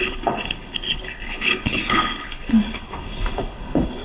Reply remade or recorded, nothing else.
remade